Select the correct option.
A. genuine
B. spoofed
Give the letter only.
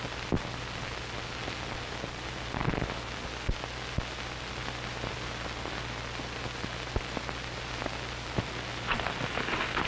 A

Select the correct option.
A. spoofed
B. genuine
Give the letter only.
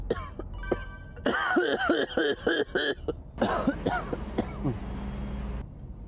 B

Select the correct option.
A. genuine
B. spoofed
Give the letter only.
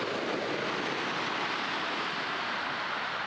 A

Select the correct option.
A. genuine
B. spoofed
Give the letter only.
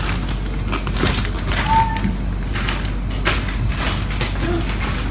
A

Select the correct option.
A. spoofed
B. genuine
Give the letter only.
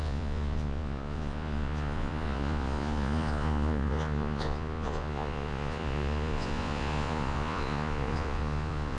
A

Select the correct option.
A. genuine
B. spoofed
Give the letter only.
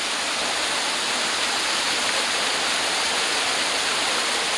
A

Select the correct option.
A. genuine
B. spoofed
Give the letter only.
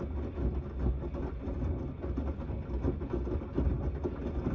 A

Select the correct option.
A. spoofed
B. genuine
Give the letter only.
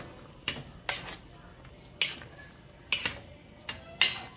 B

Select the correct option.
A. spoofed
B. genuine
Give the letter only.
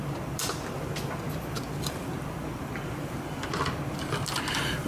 B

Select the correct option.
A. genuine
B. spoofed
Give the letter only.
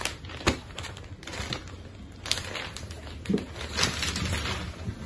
A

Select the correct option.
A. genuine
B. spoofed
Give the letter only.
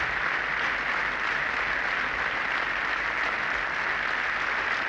A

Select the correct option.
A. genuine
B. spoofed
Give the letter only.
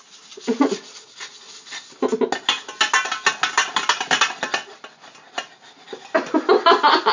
A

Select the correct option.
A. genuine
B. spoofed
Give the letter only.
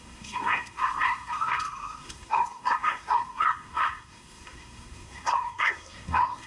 B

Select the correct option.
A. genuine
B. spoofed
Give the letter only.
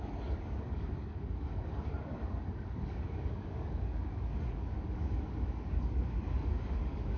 B